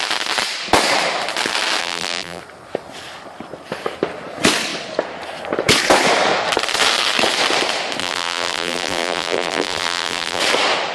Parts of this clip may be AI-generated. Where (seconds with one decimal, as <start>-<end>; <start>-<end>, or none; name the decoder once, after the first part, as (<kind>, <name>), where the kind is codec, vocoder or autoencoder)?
1.8-2.4 (vocoder, BigVGAN v2); 8.0-10.4